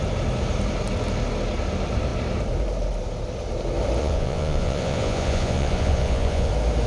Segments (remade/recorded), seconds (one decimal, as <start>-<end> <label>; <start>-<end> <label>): 0.0-4.0 recorded; 4.0-6.5 remade; 6.5-6.9 recorded